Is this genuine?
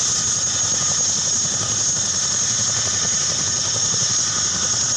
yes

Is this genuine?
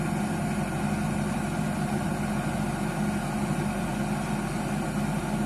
yes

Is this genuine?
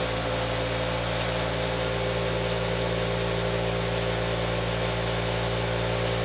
yes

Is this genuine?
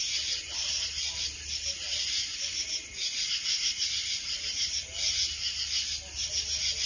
yes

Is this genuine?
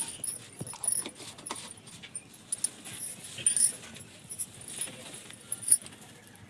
yes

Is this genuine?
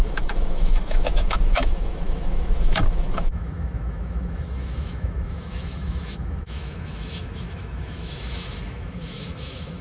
no